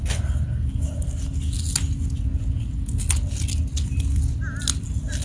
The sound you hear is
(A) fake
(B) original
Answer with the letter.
B